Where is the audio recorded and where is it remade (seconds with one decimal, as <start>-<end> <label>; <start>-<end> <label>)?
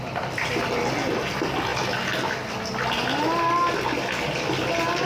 0.0-5.1 recorded